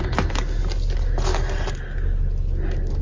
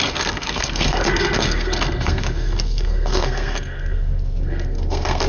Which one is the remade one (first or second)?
second